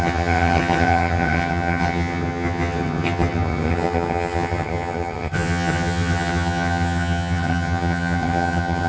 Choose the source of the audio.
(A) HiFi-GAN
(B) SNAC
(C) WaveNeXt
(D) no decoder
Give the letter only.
A